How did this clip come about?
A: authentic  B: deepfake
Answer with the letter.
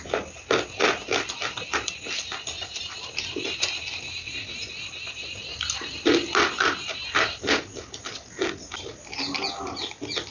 A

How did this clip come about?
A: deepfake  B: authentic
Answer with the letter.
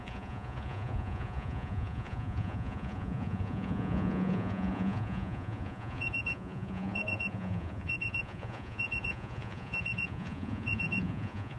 A